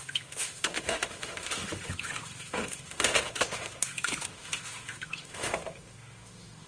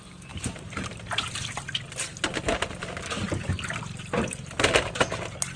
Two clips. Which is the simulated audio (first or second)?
first